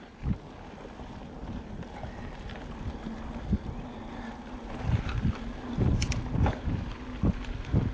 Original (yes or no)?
yes